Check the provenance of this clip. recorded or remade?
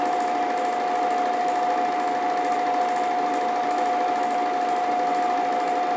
recorded